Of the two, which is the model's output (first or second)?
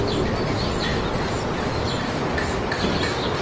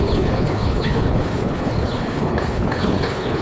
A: second